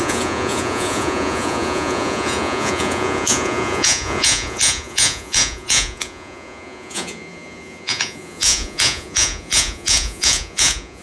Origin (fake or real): fake